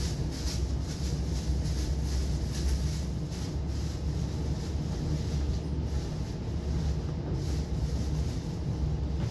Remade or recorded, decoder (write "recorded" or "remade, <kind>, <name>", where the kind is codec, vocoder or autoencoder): recorded